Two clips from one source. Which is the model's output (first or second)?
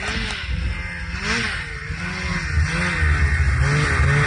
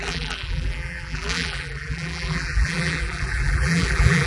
second